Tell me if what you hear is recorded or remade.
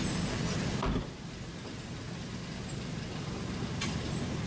recorded